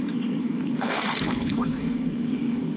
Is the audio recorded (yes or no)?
no